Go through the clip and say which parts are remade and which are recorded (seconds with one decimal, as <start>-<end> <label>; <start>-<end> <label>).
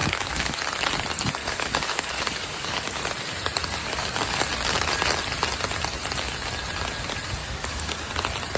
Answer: 0.0-0.6 remade; 0.6-1.4 recorded; 1.4-3.0 remade; 3.0-3.8 recorded; 3.8-4.4 remade; 4.4-7.4 recorded; 7.4-8.1 remade; 8.1-8.6 recorded